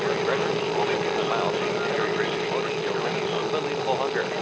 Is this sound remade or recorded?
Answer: recorded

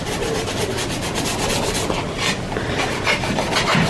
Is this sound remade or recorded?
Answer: recorded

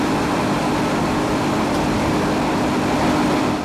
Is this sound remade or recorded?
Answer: remade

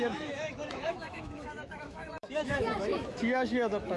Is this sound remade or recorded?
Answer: remade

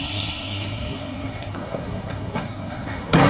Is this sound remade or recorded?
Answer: remade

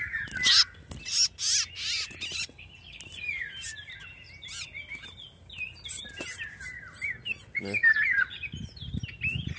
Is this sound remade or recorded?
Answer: recorded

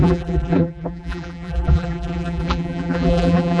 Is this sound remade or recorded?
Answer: remade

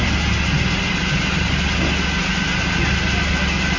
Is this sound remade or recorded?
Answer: recorded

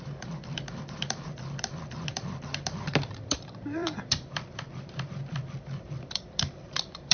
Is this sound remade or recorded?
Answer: remade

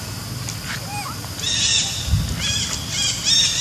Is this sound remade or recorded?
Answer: recorded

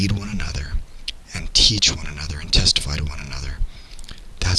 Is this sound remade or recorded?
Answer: recorded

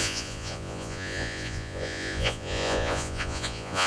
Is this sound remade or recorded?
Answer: remade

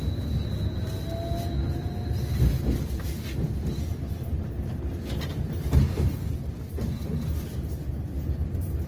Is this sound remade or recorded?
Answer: recorded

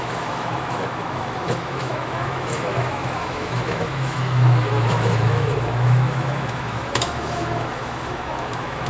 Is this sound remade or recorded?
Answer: remade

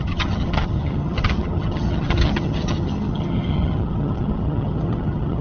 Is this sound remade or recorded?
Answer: remade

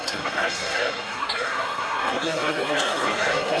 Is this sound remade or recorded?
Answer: remade